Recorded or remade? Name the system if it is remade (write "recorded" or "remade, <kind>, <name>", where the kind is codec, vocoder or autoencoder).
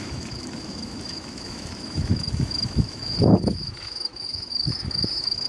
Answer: remade, autoencoder, DAC-VAE